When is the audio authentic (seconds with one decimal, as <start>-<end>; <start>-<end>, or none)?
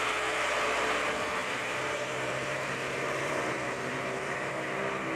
0.0-1.4; 4.5-5.2